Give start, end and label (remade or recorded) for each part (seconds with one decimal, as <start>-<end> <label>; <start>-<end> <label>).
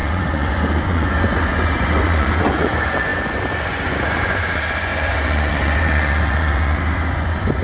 0.0-7.6 remade